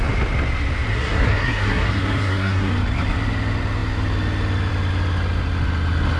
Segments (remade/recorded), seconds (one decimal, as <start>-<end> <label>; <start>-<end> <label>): 0.0-0.9 recorded; 0.9-2.7 remade; 2.7-6.2 recorded